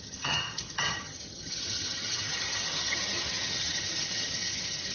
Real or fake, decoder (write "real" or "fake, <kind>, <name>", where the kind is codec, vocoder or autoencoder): fake, vocoder, HiFi-GAN